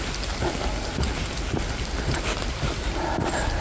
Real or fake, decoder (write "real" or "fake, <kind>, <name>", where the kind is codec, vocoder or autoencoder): real